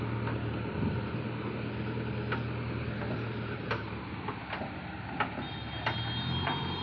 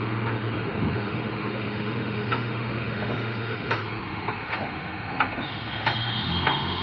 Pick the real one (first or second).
first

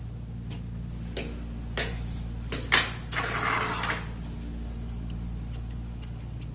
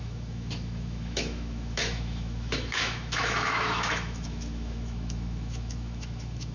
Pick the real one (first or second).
first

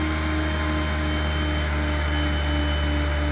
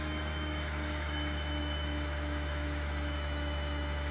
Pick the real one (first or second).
first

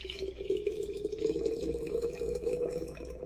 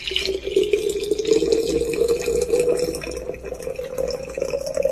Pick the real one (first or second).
second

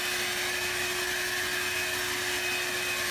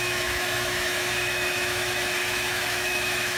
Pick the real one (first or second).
first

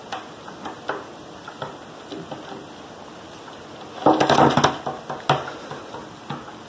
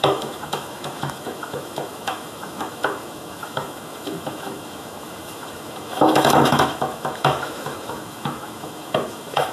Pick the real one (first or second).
first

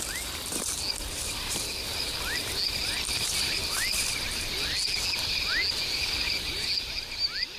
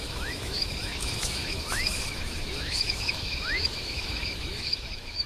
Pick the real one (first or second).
first